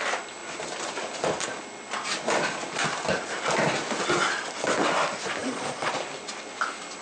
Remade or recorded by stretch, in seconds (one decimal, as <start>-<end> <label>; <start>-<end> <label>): 0.0-5.4 recorded; 5.4-5.9 remade; 5.9-7.0 recorded